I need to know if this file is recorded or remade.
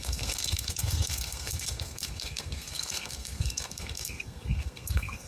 remade